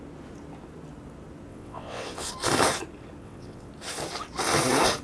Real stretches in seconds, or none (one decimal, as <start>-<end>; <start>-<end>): 0.0-1.5; 2.3-3.2; 3.7-5.0